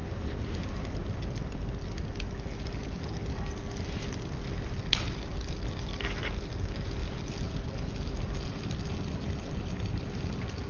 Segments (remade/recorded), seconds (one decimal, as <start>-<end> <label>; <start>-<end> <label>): 0.0-10.7 recorded